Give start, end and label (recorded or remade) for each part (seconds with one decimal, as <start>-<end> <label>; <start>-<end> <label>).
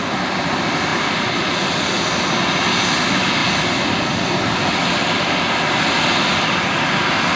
0.0-7.4 recorded